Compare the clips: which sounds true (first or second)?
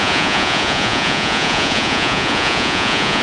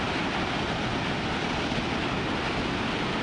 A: second